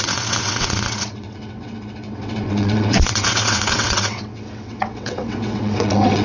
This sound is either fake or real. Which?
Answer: fake